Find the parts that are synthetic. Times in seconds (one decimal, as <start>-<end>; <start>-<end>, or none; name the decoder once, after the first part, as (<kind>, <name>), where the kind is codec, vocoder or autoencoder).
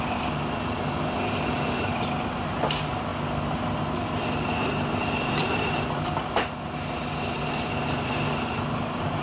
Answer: none